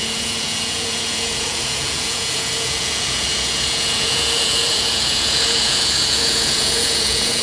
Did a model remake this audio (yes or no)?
yes